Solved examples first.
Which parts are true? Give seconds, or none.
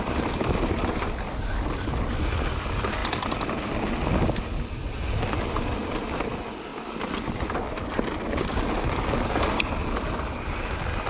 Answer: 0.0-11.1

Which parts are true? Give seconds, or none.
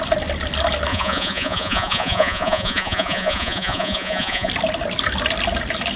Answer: 0.0-0.9; 4.5-6.0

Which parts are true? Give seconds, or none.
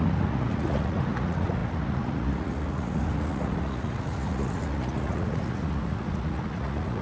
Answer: none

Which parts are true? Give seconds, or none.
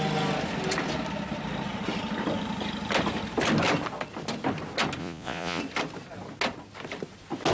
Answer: 0.0-5.0; 5.6-7.5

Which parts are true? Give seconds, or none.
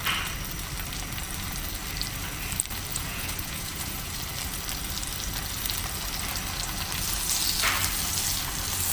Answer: 0.0-2.9; 4.2-8.9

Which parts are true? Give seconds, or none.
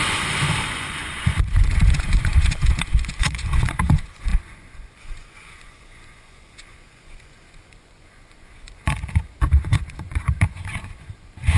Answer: none